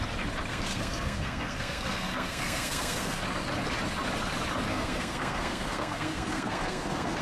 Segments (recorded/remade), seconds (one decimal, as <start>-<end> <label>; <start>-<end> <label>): 0.0-0.5 recorded; 0.5-3.2 remade; 3.2-4.7 recorded; 4.7-7.2 remade